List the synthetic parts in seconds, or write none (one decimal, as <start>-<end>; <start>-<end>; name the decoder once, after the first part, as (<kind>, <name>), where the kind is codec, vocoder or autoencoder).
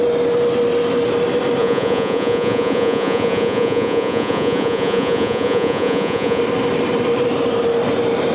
1.6-6.4 (vocoder, Vocos)